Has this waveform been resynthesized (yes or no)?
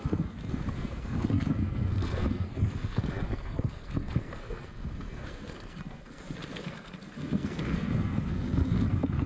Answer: yes